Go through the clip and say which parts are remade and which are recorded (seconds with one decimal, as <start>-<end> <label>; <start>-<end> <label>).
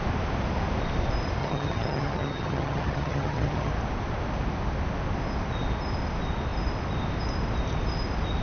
0.0-1.4 recorded; 1.4-3.7 remade; 3.7-8.4 recorded